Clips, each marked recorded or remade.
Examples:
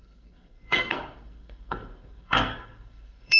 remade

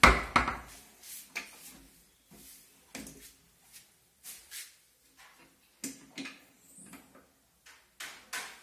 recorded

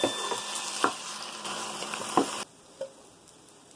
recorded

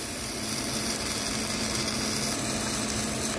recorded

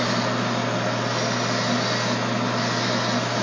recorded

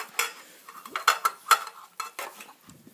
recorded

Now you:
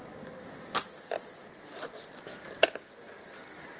recorded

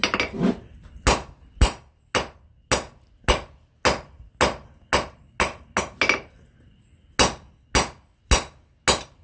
recorded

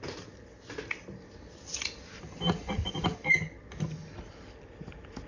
recorded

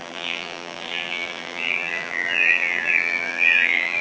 remade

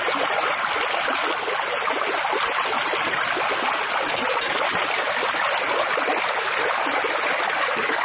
recorded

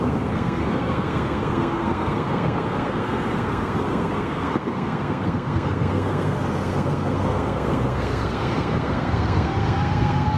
remade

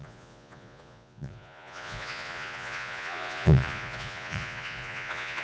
remade